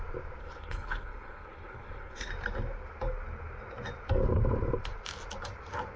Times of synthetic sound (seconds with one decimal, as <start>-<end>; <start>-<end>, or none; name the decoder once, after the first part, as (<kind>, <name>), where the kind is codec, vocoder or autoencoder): 0.4-2.3 (codec, HILCodec)